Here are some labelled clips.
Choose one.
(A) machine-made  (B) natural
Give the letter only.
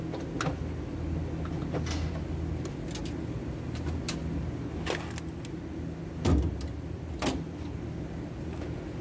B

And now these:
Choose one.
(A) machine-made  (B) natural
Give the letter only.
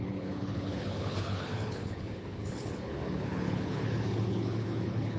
A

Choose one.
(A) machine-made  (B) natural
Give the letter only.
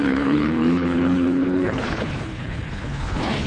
A